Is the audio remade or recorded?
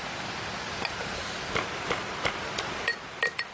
recorded